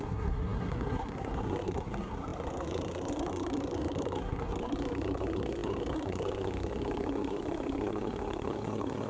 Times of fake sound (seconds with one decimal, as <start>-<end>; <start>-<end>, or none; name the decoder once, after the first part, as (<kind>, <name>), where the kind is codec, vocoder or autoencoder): 0.0-9.1 (codec, SNAC)